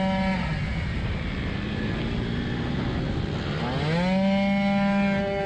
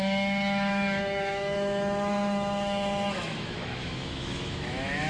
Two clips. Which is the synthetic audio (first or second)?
second